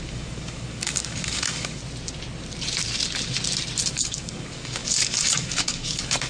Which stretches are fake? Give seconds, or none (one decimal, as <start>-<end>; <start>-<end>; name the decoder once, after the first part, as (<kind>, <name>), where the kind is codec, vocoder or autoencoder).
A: 0.0-1.8 (codec, DAC); 3.9-6.3